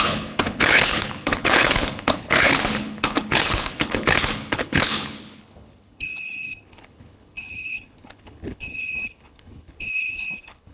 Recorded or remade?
remade